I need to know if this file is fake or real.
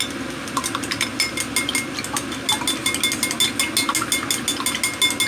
real